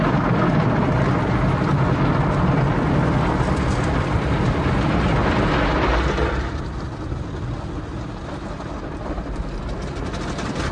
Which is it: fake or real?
real